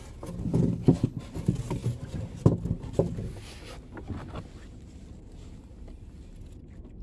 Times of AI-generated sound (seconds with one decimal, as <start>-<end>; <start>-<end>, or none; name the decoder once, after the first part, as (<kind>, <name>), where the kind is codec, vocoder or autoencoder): 0.4-1.2 (codec, HILCodec)